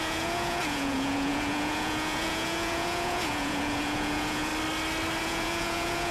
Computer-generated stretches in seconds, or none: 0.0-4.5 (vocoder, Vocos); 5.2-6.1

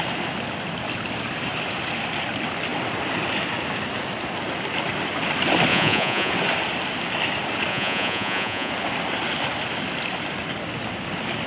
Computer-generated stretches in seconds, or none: 5.7-6.3 (vocoder, Vocos); 7.7-8.7

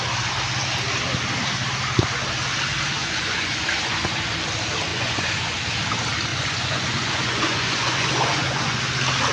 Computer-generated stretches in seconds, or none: 3.0-4.3 (vocoder, Vocos); 4.9-5.5; 6.3-8.8

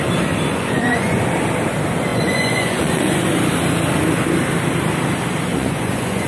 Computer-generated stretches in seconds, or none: 0.5-1.2 (vocoder, Vocos); 2.1-3.3; 5.5-6.3

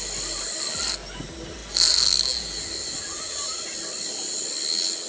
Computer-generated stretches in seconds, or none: none

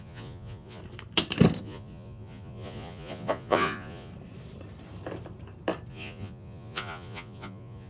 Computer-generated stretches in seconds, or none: 0.0-0.8 (vocoder, Vocos); 1.6-4.1; 5.9-7.9